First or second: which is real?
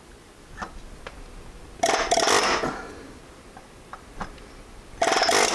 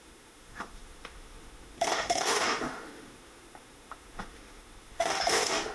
first